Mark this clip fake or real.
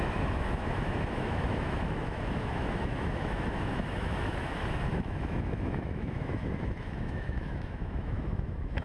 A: fake